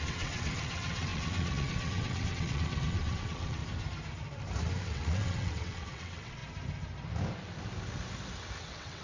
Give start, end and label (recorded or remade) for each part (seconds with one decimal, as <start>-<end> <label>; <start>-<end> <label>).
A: 0.0-3.6 remade; 3.6-4.8 recorded; 4.8-6.4 remade; 6.4-8.6 recorded; 8.6-9.0 remade